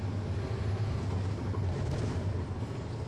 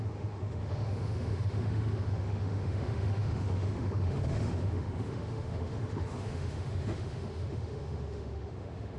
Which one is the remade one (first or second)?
second